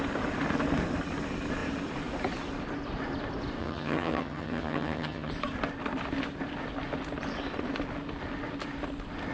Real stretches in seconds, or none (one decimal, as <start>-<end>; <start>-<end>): 0.0-3.6; 5.3-9.3